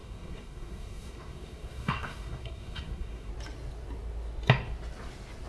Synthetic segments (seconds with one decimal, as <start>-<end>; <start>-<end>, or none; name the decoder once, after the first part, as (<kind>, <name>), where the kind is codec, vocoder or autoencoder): 0.0-3.3 (codec, SNAC)